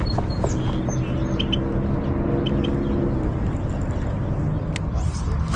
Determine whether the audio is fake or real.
real